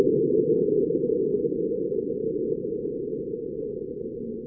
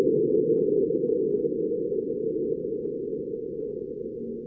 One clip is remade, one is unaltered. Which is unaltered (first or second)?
second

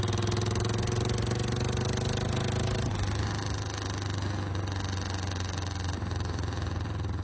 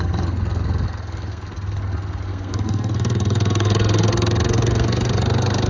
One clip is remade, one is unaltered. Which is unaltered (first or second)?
first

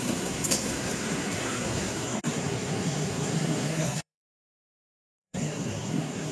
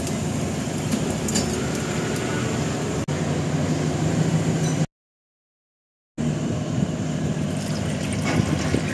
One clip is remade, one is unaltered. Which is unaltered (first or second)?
second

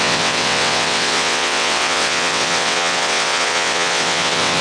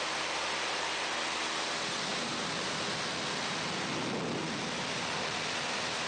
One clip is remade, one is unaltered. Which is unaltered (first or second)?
second